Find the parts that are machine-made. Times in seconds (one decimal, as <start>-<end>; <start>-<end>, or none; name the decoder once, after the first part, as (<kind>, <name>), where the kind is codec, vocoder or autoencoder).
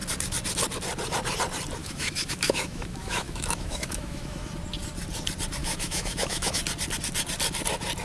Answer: 1.8-4.5 (autoencoder, DAC-VAE); 5.6-6.6